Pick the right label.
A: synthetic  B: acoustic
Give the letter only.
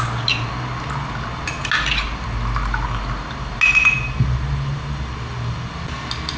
B